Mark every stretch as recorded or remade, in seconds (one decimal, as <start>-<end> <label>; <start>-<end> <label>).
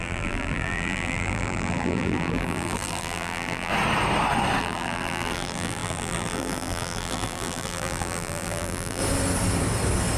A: 0.0-3.7 remade; 3.7-4.6 recorded; 4.6-9.0 remade; 9.0-10.2 recorded